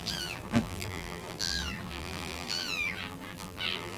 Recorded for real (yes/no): no